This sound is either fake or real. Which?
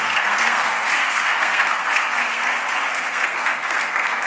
fake